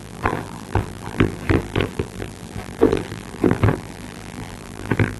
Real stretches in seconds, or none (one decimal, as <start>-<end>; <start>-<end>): none